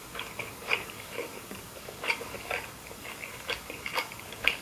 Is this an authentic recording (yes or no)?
no